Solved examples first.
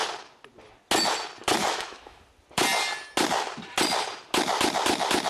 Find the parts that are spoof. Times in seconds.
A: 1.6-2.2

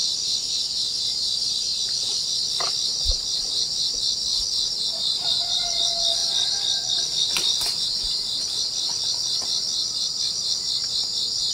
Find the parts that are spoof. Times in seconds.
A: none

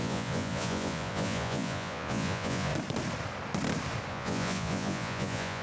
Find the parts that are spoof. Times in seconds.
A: 0.0-2.7; 4.1-5.6

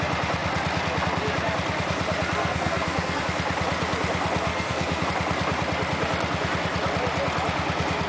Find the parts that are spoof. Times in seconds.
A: 2.4-3.2; 4.5-5.1